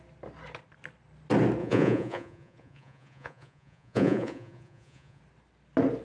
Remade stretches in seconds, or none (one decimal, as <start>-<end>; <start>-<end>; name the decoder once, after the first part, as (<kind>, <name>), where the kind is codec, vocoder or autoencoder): 1.6-5.2 (vocoder, Vocos)